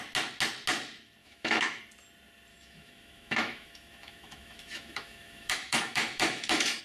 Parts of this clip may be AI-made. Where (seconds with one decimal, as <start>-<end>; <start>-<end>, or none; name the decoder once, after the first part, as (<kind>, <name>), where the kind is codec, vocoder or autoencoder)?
1.2-1.8 (autoencoder, DAC-VAE); 2.5-6.8